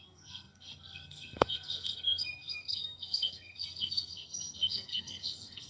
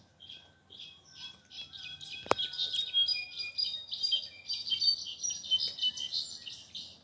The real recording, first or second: second